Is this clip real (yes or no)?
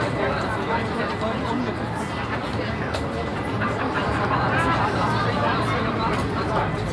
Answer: yes